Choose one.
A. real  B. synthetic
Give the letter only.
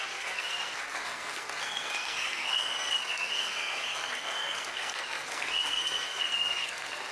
B